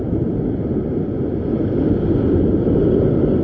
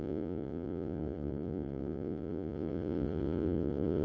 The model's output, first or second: second